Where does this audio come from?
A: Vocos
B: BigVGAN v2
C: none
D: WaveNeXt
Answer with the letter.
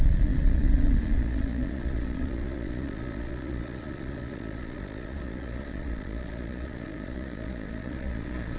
A